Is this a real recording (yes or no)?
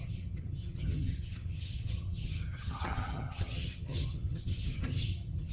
no